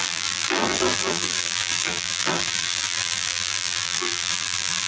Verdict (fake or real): fake